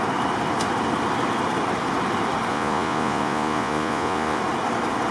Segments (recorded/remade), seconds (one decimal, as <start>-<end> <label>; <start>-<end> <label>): 0.0-2.5 recorded; 2.5-4.4 remade; 4.4-5.1 recorded